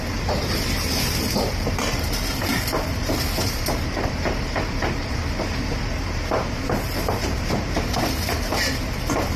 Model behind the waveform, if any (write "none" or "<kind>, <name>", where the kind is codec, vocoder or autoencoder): vocoder, BigVGAN v2